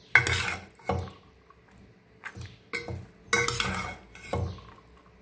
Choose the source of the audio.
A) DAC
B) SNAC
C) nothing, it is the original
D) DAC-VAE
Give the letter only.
C